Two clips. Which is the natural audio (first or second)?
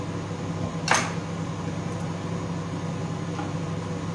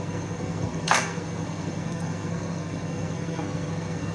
first